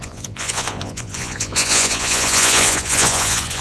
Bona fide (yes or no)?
no